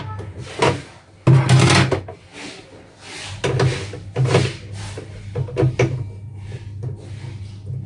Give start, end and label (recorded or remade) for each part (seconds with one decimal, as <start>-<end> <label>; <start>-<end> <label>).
0.0-7.9 recorded